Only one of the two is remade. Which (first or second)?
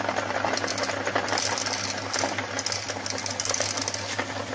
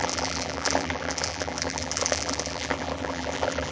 second